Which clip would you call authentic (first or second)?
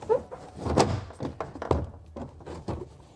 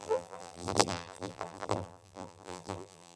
first